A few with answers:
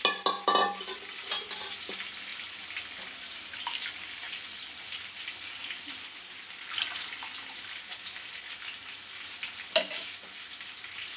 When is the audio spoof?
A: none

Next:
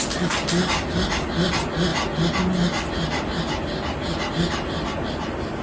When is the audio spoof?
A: none

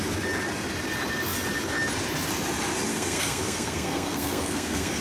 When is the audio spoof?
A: 2.9-5.0 (codec, SNAC)

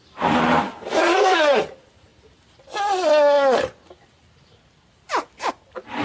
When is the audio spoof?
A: 1.1-1.6 (codec, SNAC)

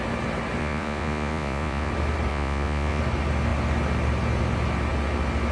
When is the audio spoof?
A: 0.6-1.9 (vocoder, Vocos); 2.3-3.0